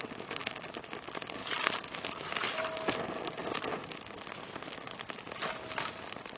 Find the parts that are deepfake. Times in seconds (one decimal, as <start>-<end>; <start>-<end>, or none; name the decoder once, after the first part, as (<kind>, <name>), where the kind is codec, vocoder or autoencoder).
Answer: none